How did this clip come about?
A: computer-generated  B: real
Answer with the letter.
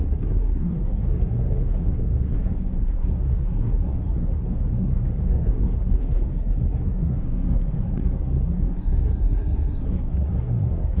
A